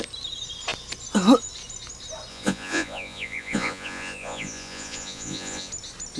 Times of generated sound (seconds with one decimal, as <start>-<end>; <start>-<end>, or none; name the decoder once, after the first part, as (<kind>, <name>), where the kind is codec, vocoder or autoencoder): 2.3-5.7 (vocoder, Vocos)